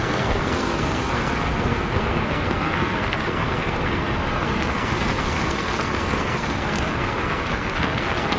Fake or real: fake